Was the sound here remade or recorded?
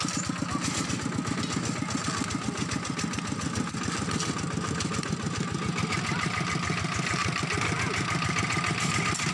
recorded